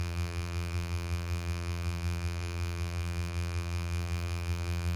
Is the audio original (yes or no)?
no